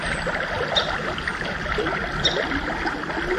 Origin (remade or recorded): recorded